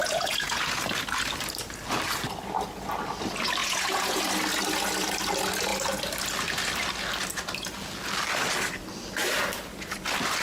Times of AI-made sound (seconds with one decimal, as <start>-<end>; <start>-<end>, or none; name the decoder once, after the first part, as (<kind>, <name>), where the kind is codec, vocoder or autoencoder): 0.0-0.8 (vocoder, Vocos); 3.6-4.2